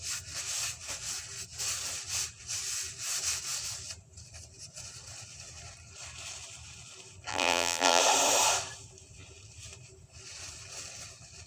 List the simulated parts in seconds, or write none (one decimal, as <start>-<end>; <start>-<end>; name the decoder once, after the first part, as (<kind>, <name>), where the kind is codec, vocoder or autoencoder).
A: 7.3-8.0 (vocoder, BigVGAN v2)